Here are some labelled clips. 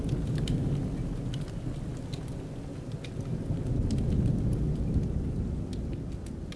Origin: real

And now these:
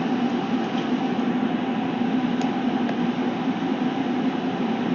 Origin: real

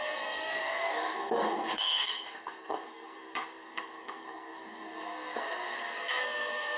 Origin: fake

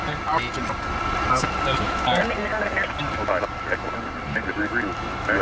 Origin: real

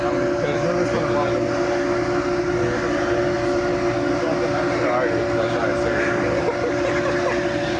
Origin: real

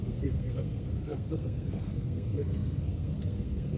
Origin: fake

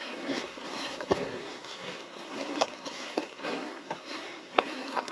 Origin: fake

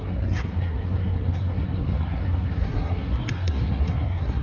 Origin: fake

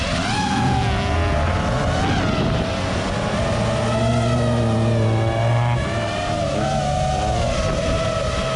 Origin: real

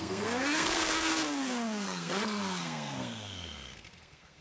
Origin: fake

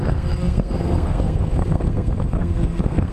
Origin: fake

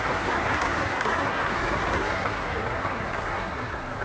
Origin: fake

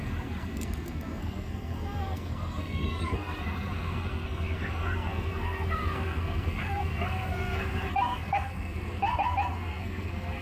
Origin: fake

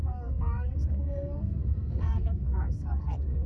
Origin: fake